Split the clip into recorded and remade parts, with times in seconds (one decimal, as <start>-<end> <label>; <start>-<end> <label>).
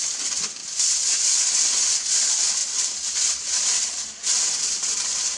0.0-5.4 recorded